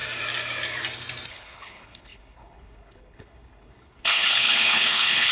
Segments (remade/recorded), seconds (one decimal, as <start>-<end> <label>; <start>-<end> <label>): 0.0-1.3 recorded; 1.3-5.3 remade